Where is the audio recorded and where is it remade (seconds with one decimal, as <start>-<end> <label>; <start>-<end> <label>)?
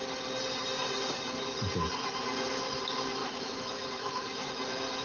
0.0-3.2 recorded; 3.2-4.5 remade; 4.5-5.0 recorded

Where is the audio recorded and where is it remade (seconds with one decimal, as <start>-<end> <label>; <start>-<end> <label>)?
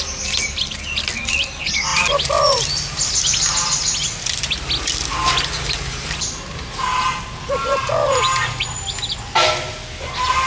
0.0-10.5 recorded